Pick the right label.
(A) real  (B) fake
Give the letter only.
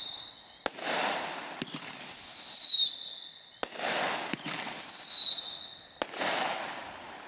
A